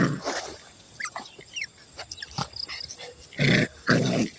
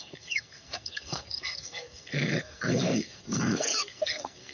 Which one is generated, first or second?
second